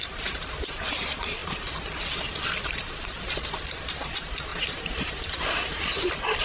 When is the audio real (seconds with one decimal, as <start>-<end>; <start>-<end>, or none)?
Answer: 0.0-4.5; 5.8-6.4